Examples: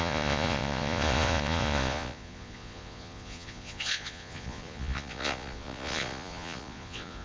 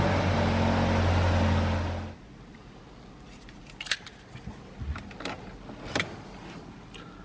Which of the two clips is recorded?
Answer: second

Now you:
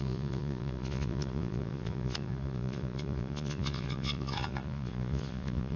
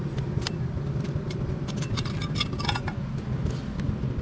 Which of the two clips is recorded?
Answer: second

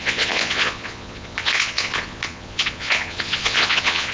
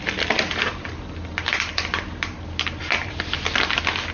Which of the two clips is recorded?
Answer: second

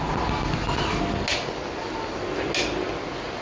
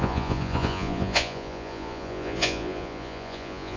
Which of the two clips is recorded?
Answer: first